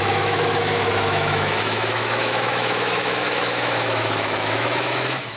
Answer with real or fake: fake